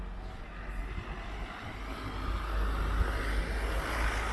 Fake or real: real